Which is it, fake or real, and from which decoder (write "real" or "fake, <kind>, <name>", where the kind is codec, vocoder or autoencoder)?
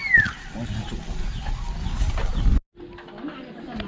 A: real